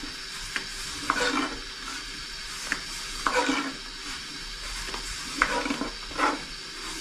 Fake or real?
real